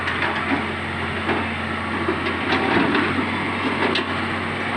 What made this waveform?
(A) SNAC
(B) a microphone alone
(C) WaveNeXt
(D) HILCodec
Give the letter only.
B